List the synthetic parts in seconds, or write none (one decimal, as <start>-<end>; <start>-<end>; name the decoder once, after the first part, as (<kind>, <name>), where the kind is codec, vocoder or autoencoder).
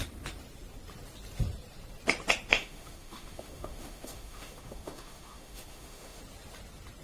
2.5-6.2 (autoencoder, DAC-VAE)